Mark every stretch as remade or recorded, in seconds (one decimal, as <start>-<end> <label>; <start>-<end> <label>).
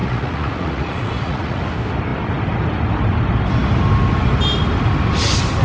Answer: 0.0-1.6 remade; 1.6-5.6 recorded